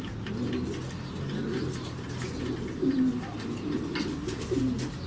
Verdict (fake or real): real